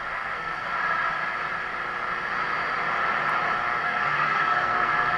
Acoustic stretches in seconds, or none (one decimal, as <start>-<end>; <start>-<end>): 0.7-3.8